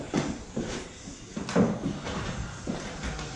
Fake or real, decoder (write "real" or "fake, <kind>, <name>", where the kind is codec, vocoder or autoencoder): real